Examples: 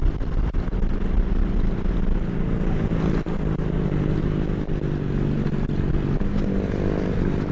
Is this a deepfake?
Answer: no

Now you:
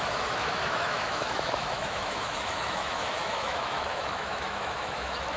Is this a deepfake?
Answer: yes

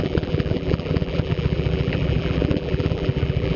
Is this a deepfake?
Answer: yes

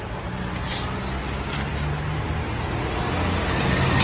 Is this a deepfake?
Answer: no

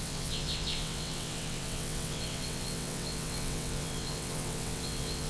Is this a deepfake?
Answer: yes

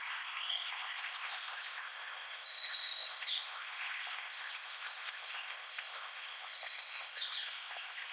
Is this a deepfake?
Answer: yes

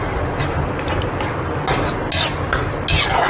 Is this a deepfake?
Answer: no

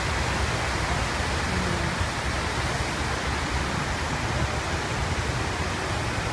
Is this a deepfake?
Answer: no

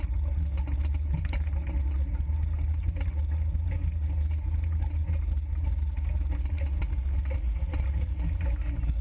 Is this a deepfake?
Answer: no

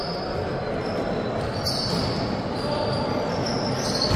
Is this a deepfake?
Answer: no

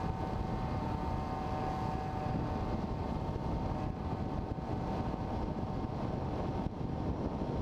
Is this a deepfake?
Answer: no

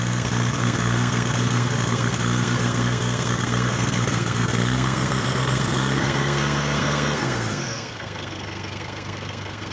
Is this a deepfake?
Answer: yes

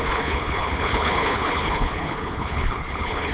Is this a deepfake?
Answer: yes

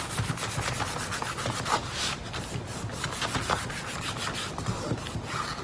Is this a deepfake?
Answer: no